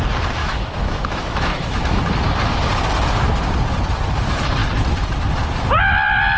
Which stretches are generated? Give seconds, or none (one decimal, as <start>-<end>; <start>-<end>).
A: 0.4-2.0